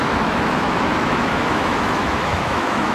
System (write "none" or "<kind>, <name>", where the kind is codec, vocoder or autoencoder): autoencoder, DAC-VAE